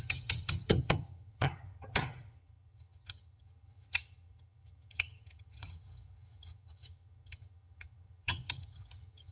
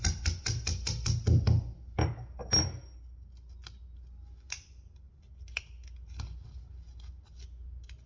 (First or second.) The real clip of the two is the second